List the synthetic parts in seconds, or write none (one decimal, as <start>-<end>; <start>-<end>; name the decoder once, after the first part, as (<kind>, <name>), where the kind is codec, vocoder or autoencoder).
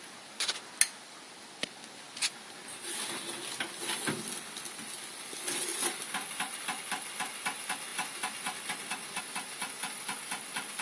none